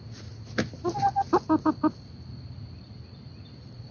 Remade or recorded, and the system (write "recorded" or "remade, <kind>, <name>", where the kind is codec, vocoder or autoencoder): recorded